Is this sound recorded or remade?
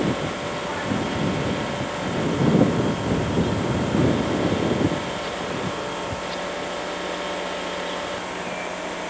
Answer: recorded